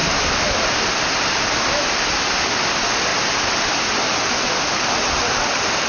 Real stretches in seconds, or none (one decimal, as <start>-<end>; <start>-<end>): 1.8-3.1; 4.0-5.9